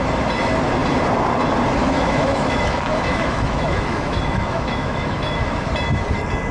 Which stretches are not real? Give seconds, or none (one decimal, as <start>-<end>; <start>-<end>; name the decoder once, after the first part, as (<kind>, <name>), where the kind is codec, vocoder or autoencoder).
1.8-5.7 (autoencoder, DAC-VAE)